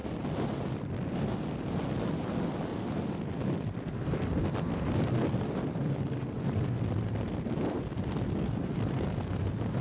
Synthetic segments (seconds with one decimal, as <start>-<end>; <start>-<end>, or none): 2.2-2.7; 3.3-9.8